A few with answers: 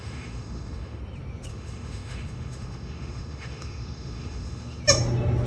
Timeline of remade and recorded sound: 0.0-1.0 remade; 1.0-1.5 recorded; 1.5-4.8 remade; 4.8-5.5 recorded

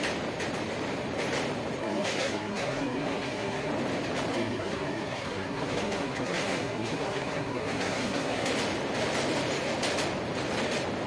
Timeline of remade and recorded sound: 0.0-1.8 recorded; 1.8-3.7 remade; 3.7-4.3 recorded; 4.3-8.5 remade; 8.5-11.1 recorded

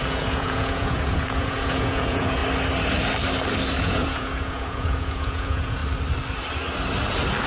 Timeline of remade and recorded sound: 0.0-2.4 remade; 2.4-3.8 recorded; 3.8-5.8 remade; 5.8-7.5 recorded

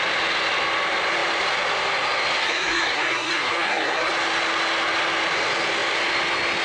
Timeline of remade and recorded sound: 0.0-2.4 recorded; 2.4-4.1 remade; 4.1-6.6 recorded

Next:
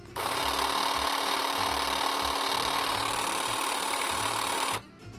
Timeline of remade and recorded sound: 0.0-0.4 remade; 0.4-3.5 recorded; 3.5-5.2 remade